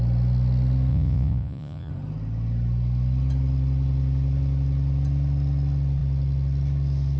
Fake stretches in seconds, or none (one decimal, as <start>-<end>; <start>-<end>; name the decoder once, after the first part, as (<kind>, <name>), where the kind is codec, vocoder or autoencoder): 0.9-1.9 (vocoder, Vocos)